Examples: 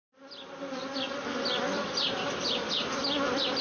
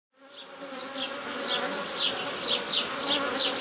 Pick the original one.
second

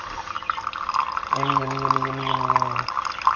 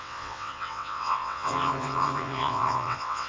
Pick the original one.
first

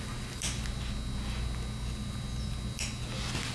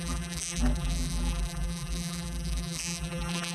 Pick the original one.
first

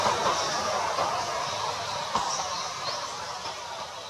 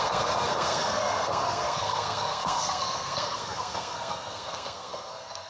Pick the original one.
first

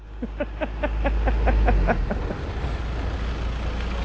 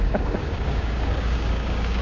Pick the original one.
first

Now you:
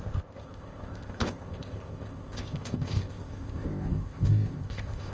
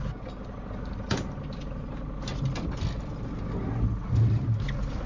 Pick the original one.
second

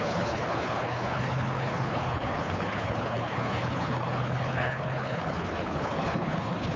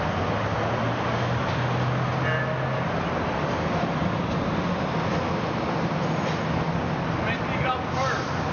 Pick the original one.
second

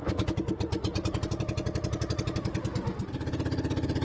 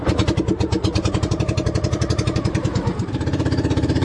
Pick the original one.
first